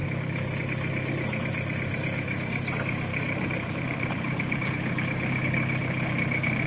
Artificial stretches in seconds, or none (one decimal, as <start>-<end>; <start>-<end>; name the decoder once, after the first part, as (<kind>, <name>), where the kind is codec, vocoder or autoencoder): 3.1-4.7 (vocoder, BigVGAN v2)